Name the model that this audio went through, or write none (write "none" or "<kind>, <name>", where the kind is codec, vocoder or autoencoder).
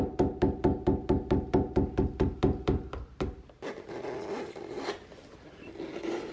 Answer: none